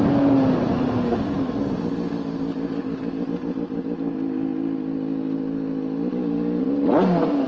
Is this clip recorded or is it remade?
recorded